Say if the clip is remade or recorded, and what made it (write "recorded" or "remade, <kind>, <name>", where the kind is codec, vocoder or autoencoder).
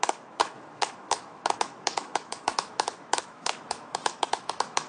remade, autoencoder, DAC-VAE